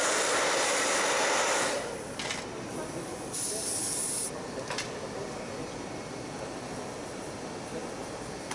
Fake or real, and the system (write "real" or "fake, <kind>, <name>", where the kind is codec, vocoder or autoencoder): real